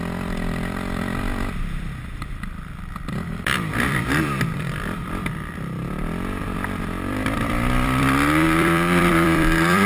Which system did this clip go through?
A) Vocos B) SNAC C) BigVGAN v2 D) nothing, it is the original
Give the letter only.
C